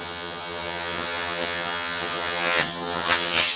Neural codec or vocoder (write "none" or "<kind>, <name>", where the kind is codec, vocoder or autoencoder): vocoder, HiFi-GAN